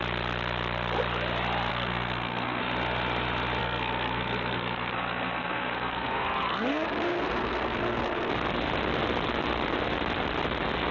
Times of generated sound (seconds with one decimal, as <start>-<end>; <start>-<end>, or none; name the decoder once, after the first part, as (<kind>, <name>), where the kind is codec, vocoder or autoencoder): 1.7-2.6 (codec, SNAC); 3.6-8.3